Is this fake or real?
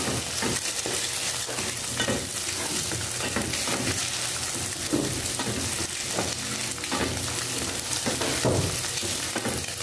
real